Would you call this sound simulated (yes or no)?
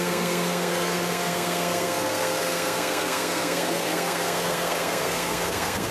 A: yes